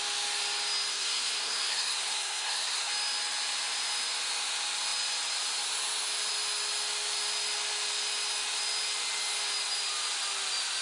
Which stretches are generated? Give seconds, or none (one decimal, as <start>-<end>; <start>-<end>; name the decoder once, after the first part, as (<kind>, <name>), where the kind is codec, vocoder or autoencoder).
0.9-2.9 (codec, SNAC)